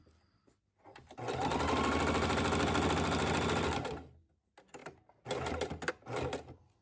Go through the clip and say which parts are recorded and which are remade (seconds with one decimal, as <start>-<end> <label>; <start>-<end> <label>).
0.0-6.8 recorded